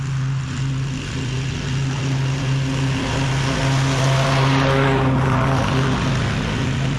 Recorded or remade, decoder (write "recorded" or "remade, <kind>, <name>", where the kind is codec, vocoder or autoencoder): recorded